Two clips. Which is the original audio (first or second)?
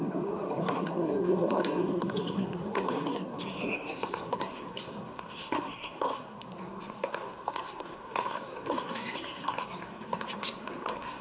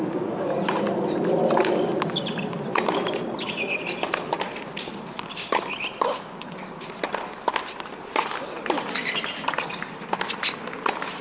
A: second